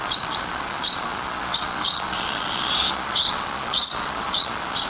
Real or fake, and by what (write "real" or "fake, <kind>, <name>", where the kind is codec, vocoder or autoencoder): fake, vocoder, Vocos